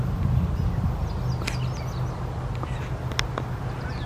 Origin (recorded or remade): recorded